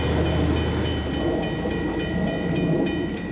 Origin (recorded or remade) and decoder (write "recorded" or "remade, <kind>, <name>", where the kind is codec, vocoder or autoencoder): recorded